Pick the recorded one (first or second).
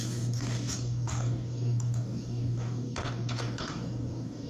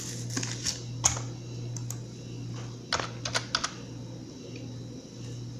second